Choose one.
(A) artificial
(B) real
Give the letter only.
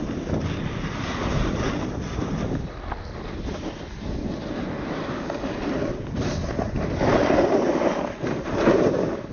B